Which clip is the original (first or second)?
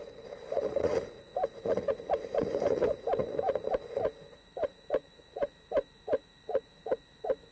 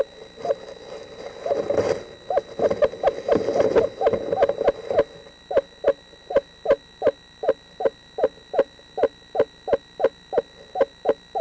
second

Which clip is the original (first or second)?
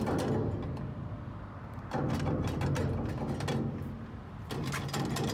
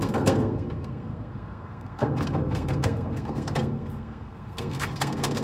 first